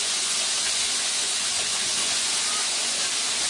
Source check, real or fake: fake